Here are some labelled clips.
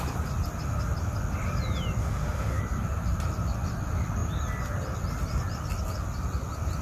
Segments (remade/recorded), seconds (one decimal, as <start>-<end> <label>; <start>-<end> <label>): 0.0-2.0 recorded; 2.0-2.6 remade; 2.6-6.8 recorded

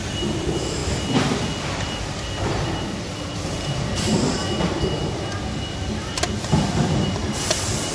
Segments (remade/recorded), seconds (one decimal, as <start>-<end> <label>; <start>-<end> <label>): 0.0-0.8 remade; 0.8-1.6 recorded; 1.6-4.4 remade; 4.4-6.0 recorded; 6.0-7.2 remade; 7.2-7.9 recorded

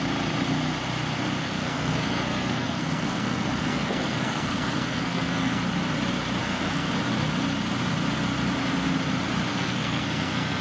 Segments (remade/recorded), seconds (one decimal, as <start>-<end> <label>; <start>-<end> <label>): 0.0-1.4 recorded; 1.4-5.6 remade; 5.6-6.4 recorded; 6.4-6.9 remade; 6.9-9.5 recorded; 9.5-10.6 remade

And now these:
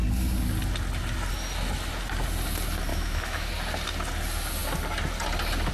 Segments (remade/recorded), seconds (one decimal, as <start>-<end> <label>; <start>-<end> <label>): 0.0-2.9 recorded; 2.9-3.5 remade; 3.5-5.7 recorded